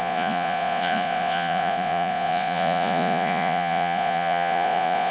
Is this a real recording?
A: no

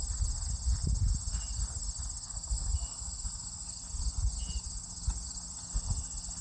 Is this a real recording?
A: yes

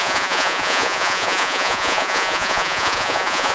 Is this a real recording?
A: no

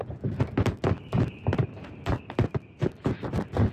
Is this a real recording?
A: yes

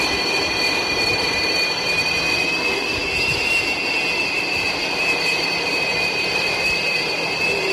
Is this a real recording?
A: no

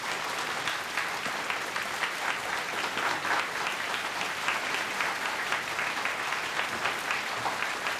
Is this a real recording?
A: yes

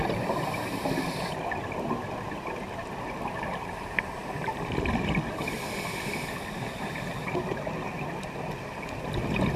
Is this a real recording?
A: yes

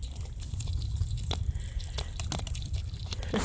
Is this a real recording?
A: yes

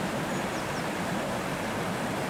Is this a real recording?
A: yes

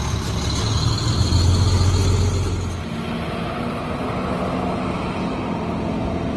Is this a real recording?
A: yes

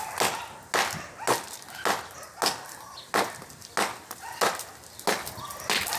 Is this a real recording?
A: yes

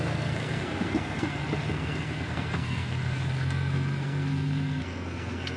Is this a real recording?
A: no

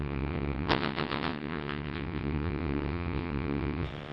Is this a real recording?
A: no